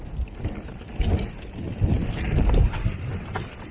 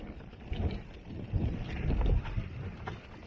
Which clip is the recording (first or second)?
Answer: first